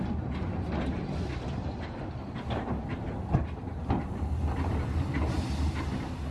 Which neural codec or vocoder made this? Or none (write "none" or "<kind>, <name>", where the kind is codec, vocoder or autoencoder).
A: none